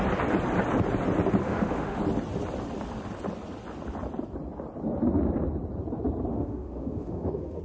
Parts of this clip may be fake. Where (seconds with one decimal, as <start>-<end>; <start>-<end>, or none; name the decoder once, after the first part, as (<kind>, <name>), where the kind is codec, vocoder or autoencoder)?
1.4-2.0 (autoencoder, DAC-VAE); 6.3-7.6